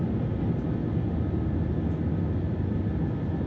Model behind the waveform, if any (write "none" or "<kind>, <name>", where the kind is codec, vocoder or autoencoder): none